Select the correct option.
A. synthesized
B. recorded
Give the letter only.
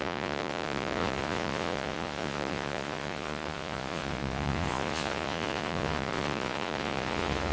A